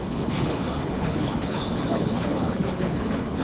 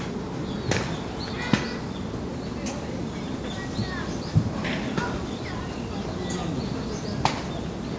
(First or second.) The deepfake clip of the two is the first